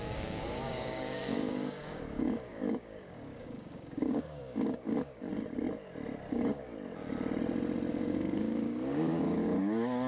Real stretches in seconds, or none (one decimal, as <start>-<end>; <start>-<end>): 5.3-6.3; 6.7-7.9